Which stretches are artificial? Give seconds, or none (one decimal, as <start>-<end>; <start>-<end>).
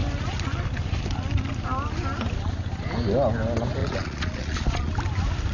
3.8-4.9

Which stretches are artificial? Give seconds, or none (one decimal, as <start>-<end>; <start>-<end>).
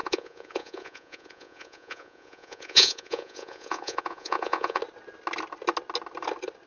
0.0-4.8